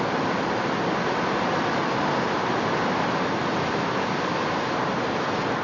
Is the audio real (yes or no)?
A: no